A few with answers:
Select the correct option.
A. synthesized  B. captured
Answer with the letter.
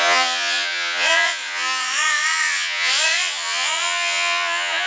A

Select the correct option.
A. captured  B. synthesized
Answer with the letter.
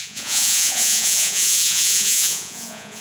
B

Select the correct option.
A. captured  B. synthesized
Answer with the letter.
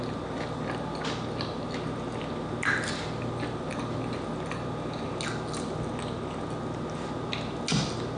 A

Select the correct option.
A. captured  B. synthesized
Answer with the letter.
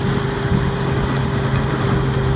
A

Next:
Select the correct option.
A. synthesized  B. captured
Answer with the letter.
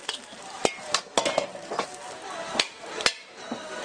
B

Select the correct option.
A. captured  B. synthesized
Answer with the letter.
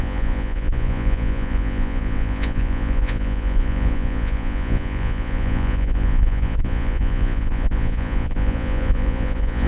B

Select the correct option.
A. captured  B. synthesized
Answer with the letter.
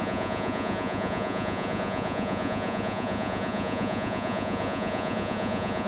B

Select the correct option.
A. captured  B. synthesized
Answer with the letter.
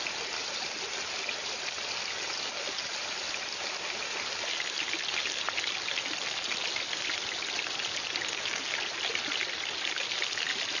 A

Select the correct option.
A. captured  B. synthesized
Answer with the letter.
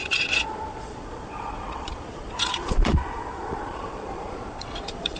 B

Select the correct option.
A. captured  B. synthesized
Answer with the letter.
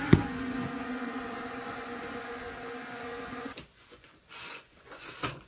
B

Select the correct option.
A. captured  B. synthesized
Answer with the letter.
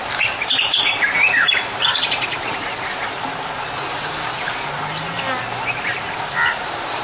A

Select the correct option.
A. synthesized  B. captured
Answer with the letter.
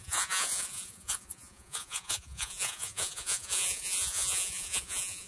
A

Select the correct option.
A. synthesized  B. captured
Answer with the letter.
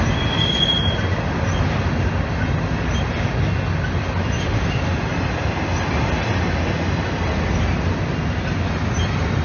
B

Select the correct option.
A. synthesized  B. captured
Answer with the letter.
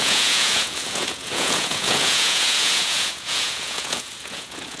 A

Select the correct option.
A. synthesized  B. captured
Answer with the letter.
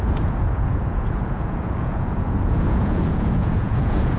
A